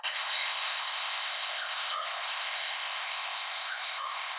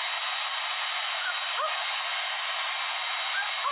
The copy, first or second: first